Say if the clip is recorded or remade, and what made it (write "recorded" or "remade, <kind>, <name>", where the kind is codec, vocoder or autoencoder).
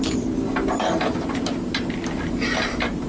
recorded